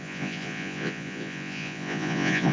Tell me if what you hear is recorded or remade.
remade